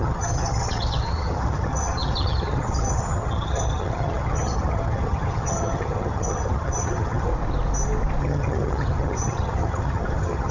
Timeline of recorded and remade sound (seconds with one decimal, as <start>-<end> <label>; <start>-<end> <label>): 0.0-7.3 remade; 7.3-8.2 recorded; 8.2-10.5 remade